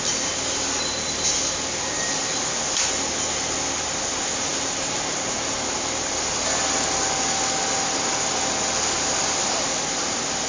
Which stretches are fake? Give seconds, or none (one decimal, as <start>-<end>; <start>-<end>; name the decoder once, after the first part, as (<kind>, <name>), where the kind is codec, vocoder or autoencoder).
4.5-6.6 (vocoder, BigVGAN v2)